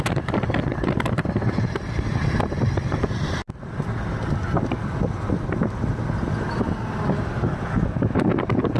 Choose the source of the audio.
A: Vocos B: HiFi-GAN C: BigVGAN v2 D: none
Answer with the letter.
D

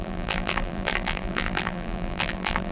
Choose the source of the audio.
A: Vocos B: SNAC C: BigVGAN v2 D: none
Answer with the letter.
C